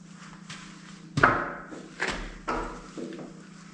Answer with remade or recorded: recorded